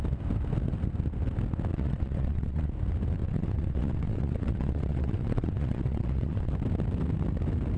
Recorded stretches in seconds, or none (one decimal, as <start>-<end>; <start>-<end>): 0.0-1.7; 2.7-3.2; 6.5-7.8